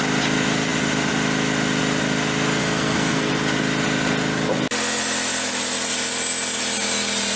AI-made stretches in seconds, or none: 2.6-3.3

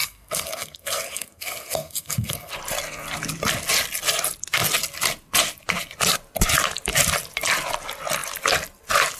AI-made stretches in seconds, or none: 0.0-2.5

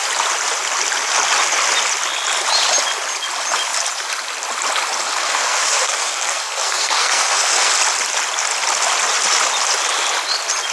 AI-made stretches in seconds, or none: 5.2-7.7